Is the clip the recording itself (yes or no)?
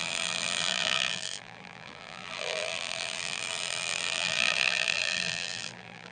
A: no